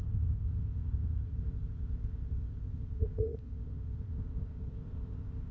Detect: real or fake fake